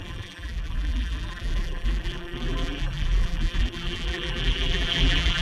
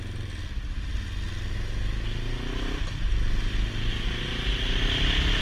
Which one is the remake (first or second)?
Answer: first